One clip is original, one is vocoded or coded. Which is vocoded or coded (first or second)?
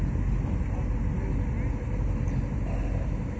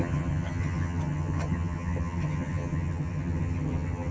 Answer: second